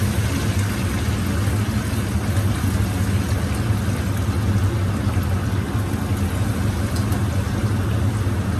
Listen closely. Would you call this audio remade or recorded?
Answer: recorded